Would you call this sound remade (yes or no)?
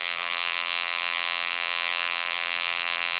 yes